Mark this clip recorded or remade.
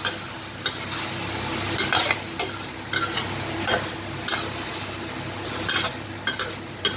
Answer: recorded